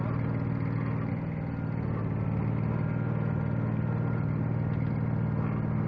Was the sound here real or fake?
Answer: real